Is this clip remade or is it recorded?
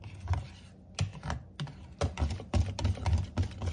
recorded